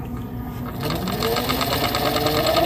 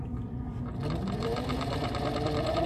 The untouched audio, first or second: first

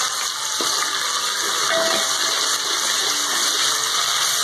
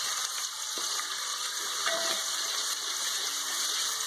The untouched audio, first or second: first